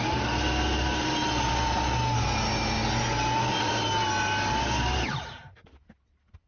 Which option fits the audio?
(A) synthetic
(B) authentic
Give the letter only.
B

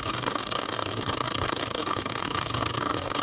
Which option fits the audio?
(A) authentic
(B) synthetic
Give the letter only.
B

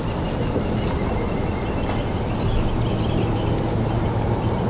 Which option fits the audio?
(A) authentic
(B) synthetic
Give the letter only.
A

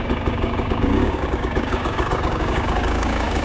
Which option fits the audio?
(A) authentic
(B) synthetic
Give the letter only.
B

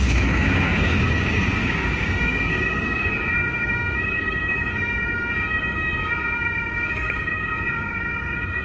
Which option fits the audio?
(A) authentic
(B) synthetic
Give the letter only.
B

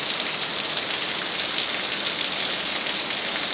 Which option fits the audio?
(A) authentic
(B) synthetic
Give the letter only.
A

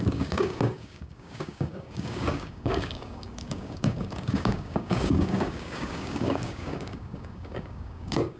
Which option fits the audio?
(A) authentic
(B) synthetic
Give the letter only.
B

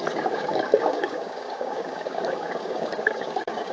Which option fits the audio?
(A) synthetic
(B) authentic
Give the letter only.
A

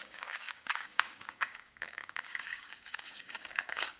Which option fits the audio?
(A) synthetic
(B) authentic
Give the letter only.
A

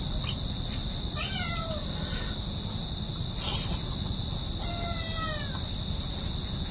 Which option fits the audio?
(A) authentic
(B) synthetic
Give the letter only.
A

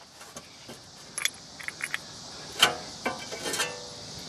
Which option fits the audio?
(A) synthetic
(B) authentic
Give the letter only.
B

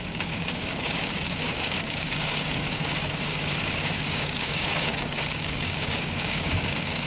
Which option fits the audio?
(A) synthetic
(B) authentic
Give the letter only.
A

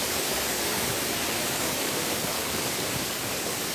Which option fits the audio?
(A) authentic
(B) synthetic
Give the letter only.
B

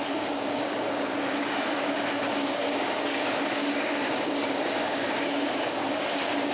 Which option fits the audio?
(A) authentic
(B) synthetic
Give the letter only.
B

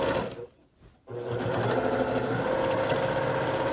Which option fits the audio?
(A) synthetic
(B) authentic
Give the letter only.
B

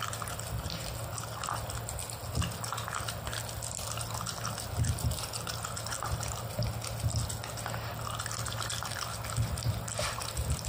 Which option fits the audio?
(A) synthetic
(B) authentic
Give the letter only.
B